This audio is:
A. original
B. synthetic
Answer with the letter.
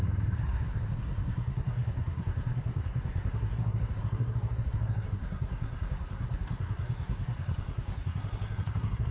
B